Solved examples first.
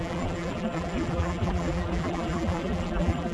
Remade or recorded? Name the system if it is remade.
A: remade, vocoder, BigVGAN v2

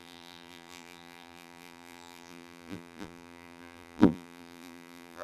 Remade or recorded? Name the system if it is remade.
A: remade, vocoder, BigVGAN v2